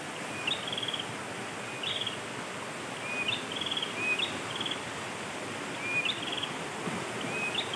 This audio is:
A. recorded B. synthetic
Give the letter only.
A